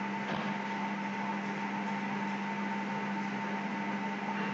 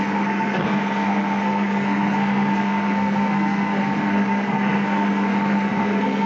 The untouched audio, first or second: first